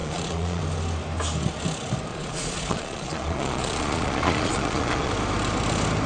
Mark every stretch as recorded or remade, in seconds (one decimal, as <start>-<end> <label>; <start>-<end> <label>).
0.0-0.6 remade; 0.6-2.1 recorded; 2.1-5.1 remade; 5.1-6.1 recorded